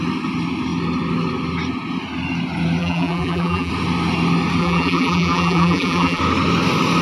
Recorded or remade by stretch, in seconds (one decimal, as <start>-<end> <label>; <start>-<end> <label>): 0.0-2.8 recorded; 2.8-3.7 remade; 3.7-4.6 recorded; 4.6-6.2 remade; 6.2-7.0 recorded